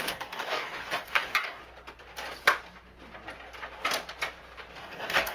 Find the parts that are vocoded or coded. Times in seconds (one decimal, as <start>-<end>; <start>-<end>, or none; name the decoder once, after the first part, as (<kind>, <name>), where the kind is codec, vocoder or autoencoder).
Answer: 0.0-1.6 (codec, DAC); 4.8-5.3